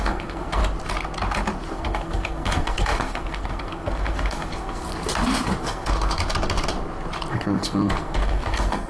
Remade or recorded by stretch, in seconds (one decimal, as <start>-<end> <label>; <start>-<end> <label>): 0.0-0.6 remade; 0.6-1.7 recorded; 1.7-4.9 remade; 4.9-5.6 recorded; 5.6-6.2 remade; 6.2-7.3 recorded; 7.3-8.9 remade